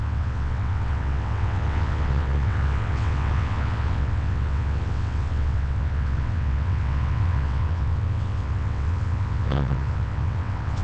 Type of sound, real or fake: fake